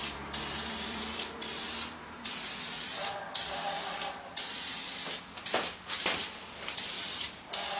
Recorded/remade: remade